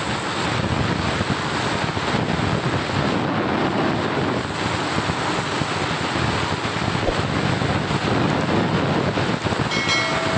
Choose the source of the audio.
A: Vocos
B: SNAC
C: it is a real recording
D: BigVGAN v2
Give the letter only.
C